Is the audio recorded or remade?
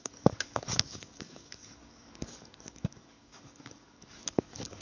remade